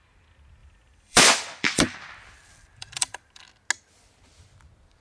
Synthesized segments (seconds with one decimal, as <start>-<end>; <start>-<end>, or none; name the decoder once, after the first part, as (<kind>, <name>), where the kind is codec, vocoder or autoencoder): 0.6-3.4 (vocoder, BigVGAN v2)